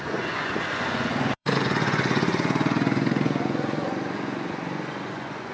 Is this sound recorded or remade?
remade